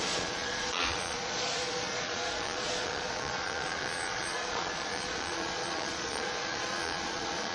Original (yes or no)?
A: no